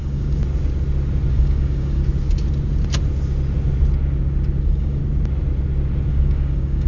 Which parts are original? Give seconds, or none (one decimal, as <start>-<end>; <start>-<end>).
0.4-1.3; 2.0-4.6; 5.0-6.1

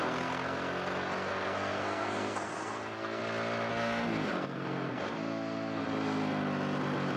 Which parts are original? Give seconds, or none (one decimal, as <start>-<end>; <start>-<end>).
3.2-3.7; 5.8-7.2

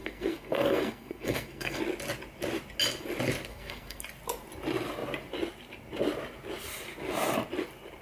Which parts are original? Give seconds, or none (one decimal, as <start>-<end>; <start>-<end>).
1.8-3.5; 4.0-8.0

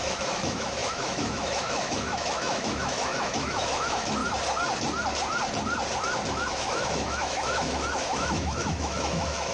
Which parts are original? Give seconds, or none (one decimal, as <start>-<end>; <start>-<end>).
4.2-6.3

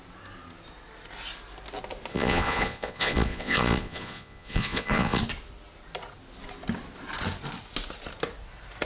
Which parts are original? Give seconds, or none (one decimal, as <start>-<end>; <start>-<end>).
0.0-2.1; 5.2-8.8

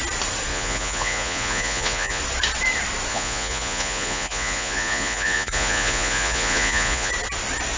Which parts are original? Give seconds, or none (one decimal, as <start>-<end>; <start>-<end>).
0.0-0.5; 2.2-3.1; 7.1-7.8

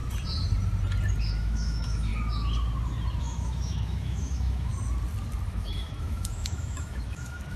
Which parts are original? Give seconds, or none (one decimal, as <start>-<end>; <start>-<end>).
0.0-1.2; 2.1-3.2; 4.7-5.5

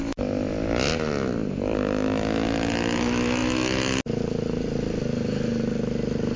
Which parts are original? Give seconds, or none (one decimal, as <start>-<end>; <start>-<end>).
0.0-6.4